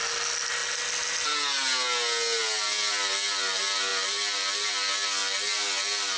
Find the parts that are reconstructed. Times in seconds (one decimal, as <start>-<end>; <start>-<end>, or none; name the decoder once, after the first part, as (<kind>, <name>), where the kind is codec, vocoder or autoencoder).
none